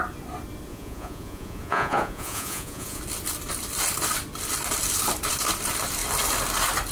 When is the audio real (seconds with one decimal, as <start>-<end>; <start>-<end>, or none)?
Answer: 0.0-0.7; 3.0-6.9